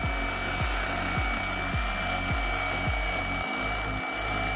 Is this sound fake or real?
real